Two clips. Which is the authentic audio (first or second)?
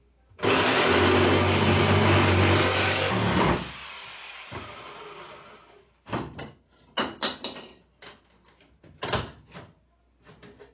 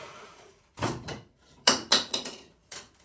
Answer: first